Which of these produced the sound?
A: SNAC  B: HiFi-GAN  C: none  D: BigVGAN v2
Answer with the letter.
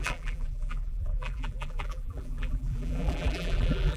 D